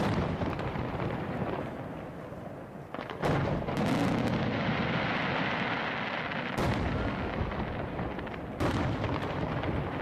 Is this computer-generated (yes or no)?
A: no